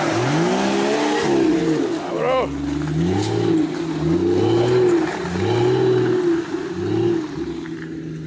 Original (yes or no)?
yes